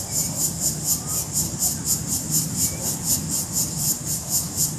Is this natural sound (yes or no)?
yes